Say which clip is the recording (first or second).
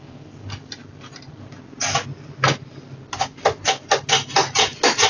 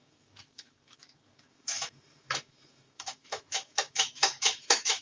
first